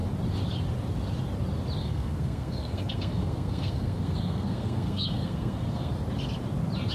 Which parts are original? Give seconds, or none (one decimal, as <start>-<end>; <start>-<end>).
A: 0.0-1.8; 5.9-6.9